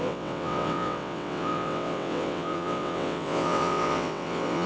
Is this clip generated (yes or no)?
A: yes